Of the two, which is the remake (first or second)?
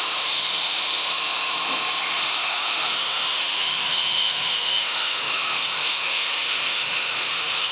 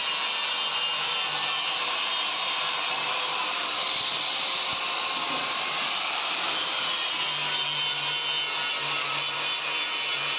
first